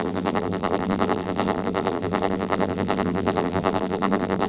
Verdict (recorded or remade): remade